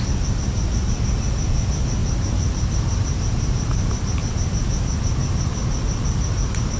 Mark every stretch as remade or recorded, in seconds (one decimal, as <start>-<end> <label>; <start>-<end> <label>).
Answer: 0.0-2.0 recorded; 2.0-4.3 remade; 4.3-6.8 recorded